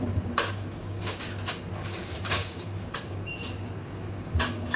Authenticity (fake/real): fake